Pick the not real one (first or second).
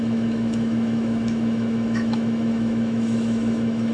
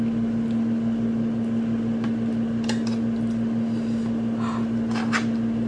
first